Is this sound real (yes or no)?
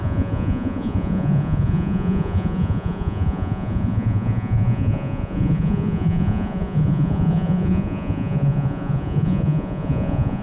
no